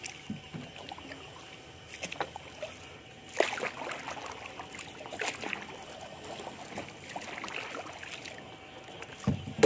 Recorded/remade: recorded